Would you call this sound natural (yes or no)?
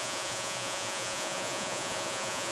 no